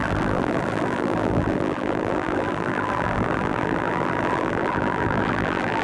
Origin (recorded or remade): remade